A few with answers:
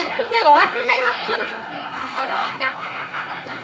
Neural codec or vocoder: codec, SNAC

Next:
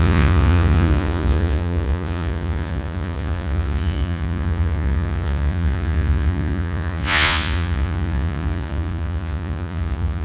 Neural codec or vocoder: vocoder, Vocos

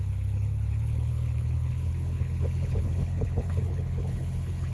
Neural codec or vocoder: codec, HILCodec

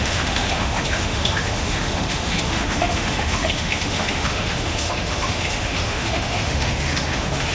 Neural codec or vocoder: autoencoder, DAC-VAE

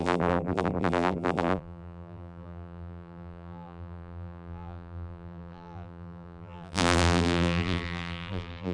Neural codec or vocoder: vocoder, BigVGAN v2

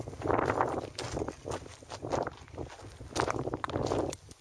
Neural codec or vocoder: none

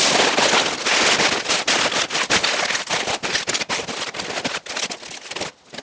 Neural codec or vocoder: none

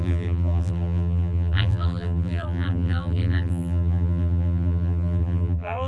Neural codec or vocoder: vocoder, BigVGAN v2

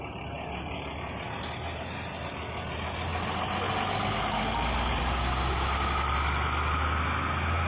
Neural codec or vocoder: none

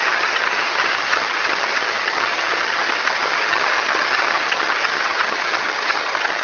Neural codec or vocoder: vocoder, HiFi-GAN